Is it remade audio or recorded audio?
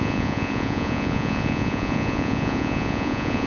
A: remade